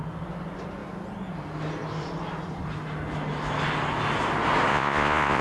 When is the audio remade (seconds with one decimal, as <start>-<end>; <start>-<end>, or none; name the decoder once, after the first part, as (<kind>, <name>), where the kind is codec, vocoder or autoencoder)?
4.7-5.4 (vocoder, Vocos)